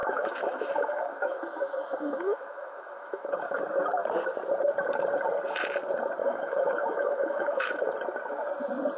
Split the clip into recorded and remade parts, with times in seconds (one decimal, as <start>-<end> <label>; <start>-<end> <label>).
0.0-3.6 remade; 3.6-6.2 recorded; 6.2-7.8 remade; 7.8-9.0 recorded